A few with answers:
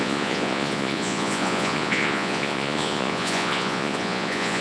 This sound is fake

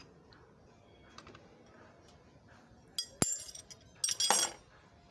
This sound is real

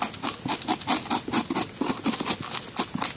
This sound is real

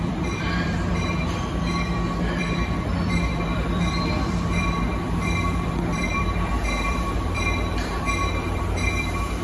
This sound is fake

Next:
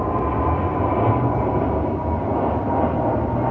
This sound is real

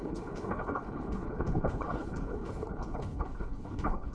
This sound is fake